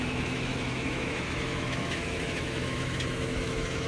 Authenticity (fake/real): fake